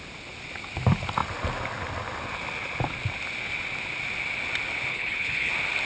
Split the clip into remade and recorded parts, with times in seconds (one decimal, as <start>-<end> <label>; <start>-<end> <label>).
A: 0.0-4.9 recorded; 4.9-5.5 remade; 5.5-5.9 recorded